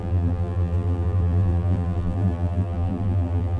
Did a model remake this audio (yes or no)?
yes